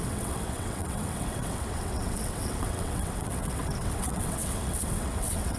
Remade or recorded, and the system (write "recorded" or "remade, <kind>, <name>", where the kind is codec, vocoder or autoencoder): remade, vocoder, WaveNeXt